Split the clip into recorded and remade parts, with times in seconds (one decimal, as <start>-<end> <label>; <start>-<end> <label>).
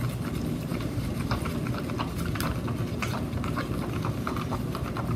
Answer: 0.0-0.7 recorded; 0.7-1.5 remade; 1.5-5.2 recorded